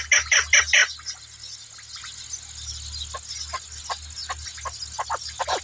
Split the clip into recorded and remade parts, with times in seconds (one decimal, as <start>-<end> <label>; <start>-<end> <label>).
0.0-5.6 recorded